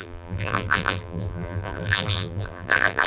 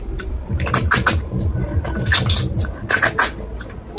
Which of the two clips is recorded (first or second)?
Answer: second